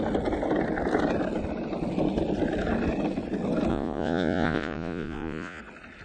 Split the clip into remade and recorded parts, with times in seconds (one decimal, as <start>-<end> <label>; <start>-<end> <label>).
0.0-3.7 recorded; 3.7-5.6 remade; 5.6-6.0 recorded